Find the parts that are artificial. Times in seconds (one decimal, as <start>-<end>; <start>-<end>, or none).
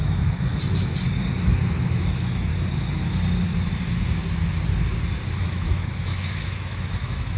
0.0-0.9; 1.8-2.5; 5.4-7.4